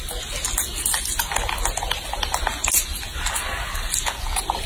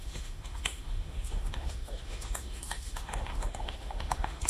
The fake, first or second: second